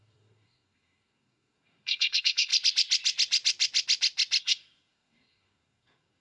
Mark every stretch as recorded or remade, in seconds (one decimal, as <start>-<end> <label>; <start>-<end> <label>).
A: 0.0-2.5 remade; 2.5-4.4 recorded; 4.4-6.2 remade